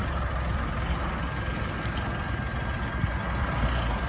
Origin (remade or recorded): recorded